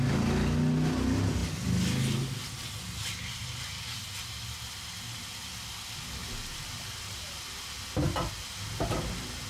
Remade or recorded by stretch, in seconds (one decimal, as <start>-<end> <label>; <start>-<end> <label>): 0.0-6.2 recorded; 6.2-8.0 remade; 8.0-9.5 recorded